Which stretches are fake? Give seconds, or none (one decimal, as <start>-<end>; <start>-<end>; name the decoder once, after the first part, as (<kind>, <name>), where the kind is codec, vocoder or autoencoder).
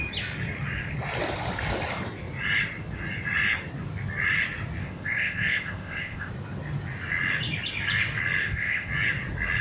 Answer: 4.8-6.3 (codec, ZipCodec); 8.4-8.9